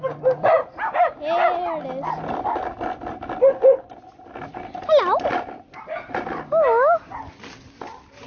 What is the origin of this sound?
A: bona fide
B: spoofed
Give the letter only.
A